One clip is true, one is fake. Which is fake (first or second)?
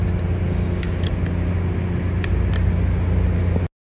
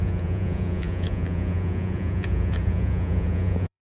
second